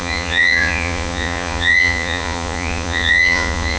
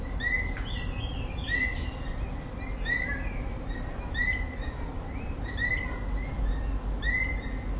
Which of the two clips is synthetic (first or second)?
first